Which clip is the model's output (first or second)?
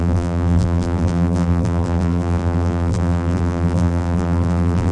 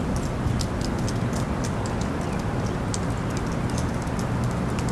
first